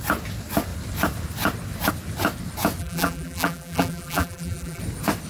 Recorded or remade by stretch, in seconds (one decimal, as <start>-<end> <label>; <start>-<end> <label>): 0.0-2.8 recorded; 2.8-4.8 remade; 4.8-5.3 recorded